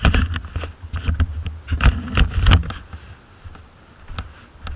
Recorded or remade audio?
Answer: recorded